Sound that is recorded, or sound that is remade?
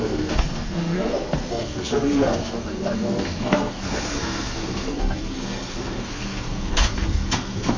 remade